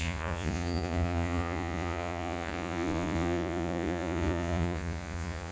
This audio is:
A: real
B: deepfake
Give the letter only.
B